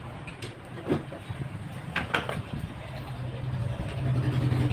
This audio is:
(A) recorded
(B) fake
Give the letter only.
A